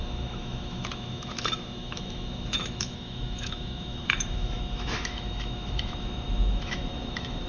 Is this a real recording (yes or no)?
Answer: no